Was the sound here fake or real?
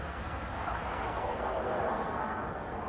fake